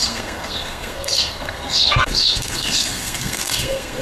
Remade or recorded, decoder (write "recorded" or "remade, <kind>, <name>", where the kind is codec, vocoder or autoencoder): remade, codec, SNAC